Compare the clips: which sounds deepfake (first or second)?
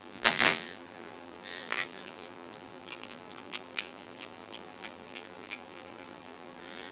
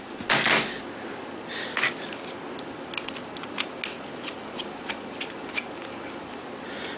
first